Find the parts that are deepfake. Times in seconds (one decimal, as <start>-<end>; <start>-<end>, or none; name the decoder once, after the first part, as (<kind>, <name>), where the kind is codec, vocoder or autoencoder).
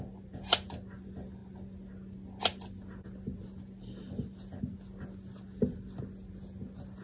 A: none